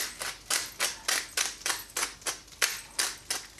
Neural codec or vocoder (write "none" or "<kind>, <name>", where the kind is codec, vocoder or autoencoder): none